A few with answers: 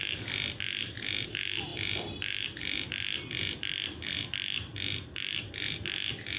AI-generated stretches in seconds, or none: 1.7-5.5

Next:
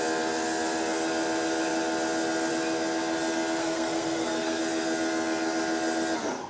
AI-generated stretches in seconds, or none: 3.6-4.6